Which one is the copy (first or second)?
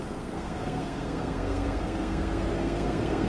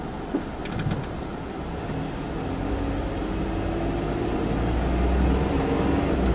first